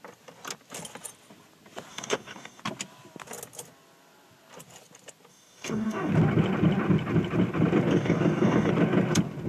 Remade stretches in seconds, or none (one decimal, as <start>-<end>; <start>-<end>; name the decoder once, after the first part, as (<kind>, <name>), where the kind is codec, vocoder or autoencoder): 1.9-2.6 (codec, DAC); 5.3-6.1; 7.9-8.7